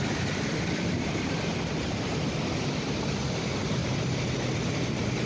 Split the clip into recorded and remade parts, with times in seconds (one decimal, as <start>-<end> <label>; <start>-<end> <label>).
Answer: 0.0-1.5 remade; 1.5-3.8 recorded; 3.8-4.8 remade; 4.8-5.3 recorded